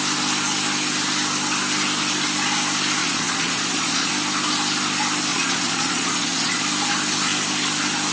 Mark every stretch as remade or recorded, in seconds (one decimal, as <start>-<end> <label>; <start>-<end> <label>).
0.0-3.0 recorded; 3.0-4.1 remade; 4.1-5.3 recorded; 5.3-6.6 remade; 6.6-8.1 recorded